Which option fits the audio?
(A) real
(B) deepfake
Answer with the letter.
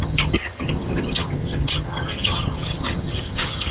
B